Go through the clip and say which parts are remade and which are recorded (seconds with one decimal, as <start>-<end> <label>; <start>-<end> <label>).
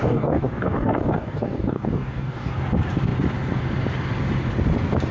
0.0-2.5 remade; 2.5-5.1 recorded